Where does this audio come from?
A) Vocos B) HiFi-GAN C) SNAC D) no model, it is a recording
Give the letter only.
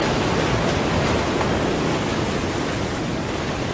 D